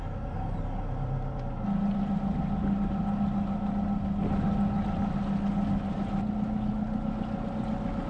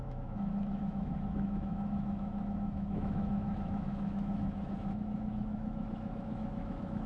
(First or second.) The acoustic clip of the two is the first